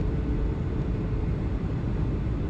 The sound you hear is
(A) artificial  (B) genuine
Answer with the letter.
A